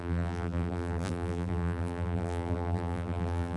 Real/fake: fake